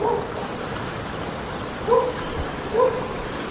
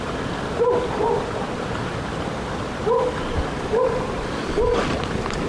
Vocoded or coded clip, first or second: second